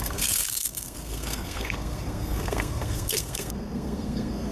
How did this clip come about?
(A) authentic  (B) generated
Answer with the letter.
B